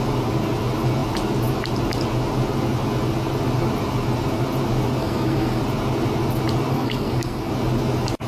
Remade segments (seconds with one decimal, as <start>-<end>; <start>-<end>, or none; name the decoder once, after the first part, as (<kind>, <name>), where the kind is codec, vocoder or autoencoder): 5.0-5.6 (codec, SNAC); 6.7-7.5